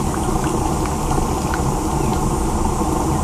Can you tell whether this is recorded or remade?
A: recorded